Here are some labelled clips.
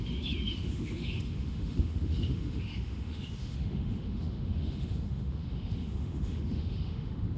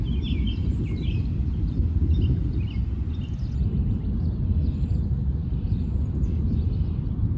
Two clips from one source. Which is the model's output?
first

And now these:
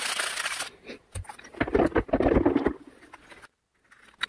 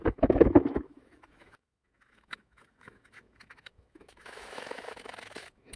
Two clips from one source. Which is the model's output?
second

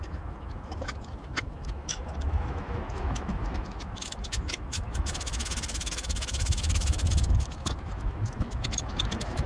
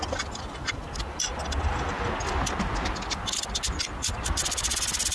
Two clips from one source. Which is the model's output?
first